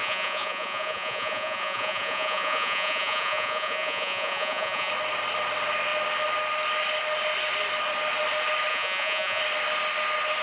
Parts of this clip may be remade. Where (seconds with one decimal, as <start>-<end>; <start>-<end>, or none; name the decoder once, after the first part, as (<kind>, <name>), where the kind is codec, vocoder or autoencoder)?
0.0-4.9 (vocoder, Vocos); 8.7-9.4